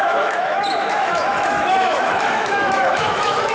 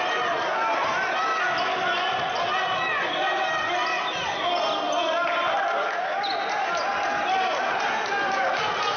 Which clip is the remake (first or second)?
first